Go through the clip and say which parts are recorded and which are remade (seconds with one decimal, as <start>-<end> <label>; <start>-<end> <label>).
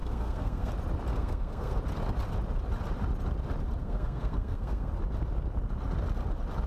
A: 0.0-0.7 remade; 0.7-1.1 recorded; 1.1-1.8 remade; 1.8-3.8 recorded; 3.8-4.9 remade; 4.9-6.7 recorded